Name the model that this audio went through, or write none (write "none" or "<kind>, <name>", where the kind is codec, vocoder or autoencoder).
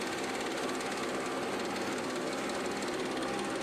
none